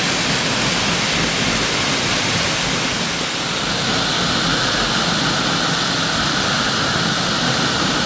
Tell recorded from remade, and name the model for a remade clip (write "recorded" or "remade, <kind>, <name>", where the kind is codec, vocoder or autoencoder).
recorded